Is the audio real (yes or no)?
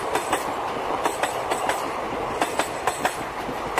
yes